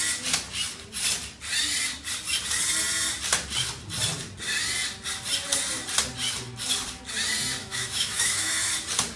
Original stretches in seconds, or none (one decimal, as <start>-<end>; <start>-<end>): 0.0-7.6; 8.7-9.2

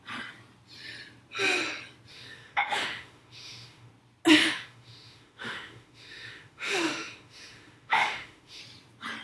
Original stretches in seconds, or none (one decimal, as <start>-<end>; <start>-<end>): 0.0-2.1; 3.9-4.4; 8.6-9.2

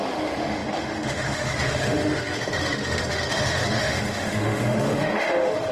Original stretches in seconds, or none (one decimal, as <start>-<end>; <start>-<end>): none

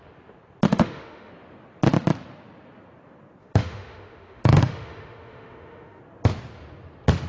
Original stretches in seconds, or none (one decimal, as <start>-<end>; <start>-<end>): 0.0-0.7; 1.3-3.4; 6.0-7.3

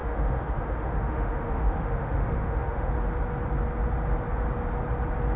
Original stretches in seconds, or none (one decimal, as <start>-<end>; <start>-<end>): 2.9-5.4

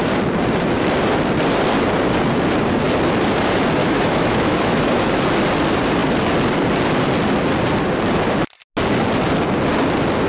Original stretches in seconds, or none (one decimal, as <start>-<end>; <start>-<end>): 0.0-3.8; 4.9-10.3

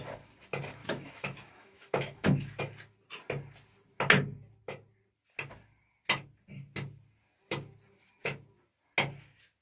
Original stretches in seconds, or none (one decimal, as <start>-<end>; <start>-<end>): 0.0-0.8; 2.6-9.6